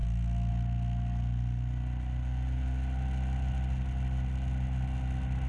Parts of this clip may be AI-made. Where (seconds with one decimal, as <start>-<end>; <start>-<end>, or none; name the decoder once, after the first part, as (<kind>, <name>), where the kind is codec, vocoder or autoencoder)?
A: none